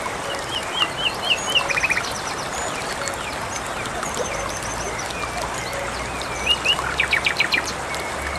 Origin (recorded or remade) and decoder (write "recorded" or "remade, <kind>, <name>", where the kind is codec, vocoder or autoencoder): recorded